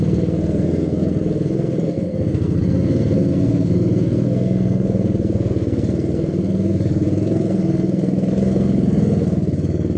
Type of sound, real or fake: fake